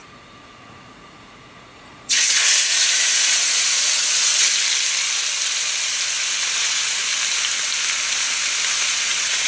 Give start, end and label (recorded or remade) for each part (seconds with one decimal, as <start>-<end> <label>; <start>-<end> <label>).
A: 0.0-4.3 remade; 4.3-6.6 recorded; 6.6-7.1 remade; 7.1-8.8 recorded; 8.8-9.5 remade